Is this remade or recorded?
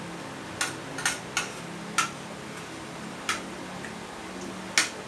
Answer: recorded